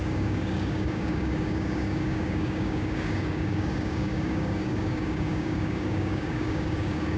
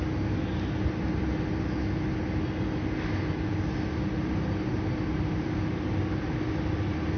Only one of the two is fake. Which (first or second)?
first